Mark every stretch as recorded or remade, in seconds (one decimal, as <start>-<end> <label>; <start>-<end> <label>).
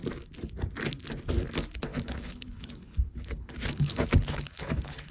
0.0-1.9 recorded; 1.9-5.1 remade